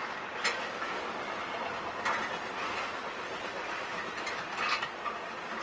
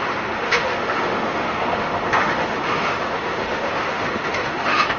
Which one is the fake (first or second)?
second